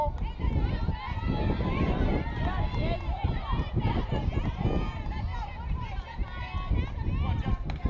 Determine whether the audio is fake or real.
real